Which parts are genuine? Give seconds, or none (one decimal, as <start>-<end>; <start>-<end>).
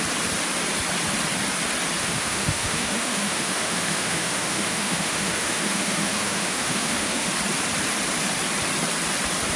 0.0-2.0; 7.3-9.6